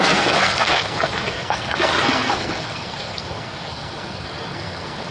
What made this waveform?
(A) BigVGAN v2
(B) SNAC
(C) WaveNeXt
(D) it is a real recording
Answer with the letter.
B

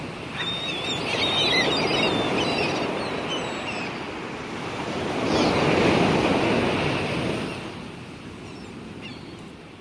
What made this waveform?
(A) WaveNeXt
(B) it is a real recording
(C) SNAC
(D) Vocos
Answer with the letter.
B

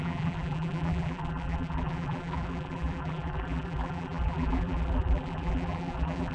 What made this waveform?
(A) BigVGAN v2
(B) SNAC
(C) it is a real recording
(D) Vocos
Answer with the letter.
A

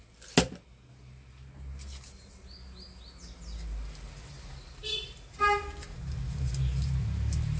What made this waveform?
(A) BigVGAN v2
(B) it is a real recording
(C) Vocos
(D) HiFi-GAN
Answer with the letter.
B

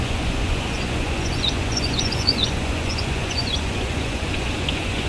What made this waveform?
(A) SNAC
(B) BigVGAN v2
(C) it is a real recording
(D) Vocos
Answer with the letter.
D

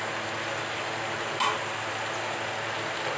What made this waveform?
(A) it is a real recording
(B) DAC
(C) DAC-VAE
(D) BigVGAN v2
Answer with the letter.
A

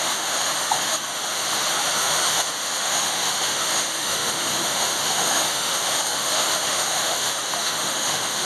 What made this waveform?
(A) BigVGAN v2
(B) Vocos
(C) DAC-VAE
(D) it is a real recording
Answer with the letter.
C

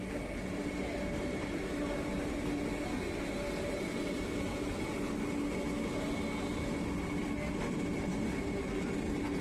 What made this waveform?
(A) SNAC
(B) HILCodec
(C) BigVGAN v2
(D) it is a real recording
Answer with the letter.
D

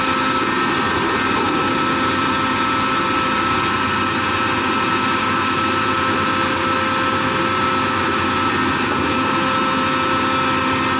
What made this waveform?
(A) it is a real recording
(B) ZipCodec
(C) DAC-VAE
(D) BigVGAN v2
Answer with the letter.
A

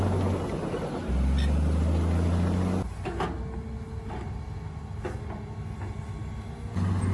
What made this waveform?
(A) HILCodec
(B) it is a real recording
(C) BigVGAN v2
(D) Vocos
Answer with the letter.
B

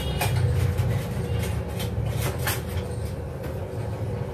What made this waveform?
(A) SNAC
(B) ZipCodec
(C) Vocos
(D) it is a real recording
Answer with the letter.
D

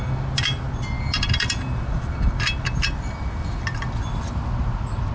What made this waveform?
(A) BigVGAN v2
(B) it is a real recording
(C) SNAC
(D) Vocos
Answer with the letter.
B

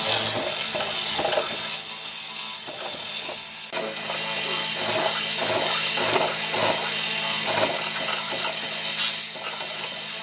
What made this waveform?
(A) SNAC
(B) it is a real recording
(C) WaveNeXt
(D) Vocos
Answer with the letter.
B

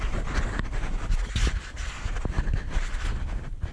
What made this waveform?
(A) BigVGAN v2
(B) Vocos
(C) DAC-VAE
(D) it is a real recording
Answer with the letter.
D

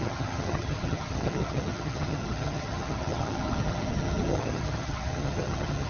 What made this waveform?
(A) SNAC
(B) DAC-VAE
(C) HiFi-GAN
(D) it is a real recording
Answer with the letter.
C